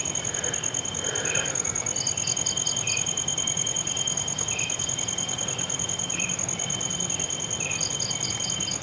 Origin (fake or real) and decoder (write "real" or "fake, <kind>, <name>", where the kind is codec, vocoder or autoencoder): real